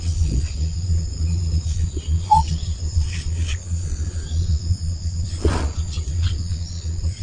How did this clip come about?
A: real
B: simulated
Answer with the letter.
B